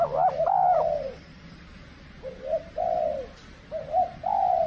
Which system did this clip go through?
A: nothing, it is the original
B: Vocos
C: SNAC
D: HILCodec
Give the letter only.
A